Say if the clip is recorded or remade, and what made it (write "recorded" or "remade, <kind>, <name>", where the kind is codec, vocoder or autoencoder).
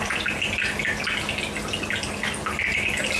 recorded